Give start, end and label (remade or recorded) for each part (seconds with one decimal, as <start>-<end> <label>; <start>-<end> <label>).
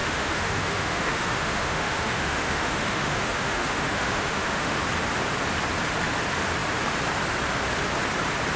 0.0-4.8 remade; 4.8-8.6 recorded